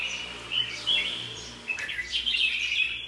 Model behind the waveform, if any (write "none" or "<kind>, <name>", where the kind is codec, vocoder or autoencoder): vocoder, BigVGAN v2